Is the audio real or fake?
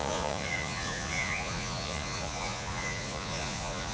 fake